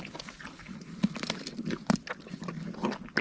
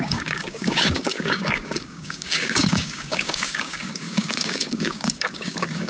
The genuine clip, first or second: first